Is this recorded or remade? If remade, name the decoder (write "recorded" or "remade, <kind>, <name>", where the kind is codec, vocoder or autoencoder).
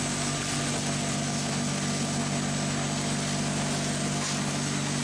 recorded